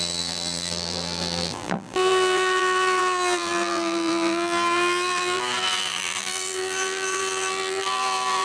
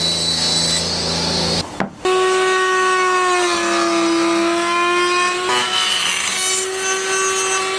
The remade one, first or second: first